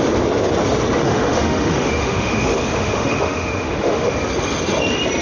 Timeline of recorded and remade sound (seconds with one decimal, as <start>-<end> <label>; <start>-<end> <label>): 0.0-1.0 recorded; 1.0-4.1 remade; 4.1-5.2 recorded